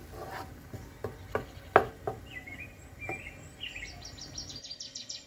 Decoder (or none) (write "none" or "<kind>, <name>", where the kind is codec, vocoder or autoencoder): none